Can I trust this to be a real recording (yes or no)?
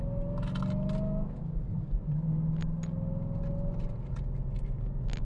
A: yes